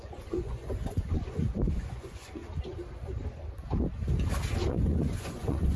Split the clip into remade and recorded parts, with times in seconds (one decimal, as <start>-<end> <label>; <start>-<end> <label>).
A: 0.0-2.4 remade; 2.4-4.7 recorded; 4.7-5.8 remade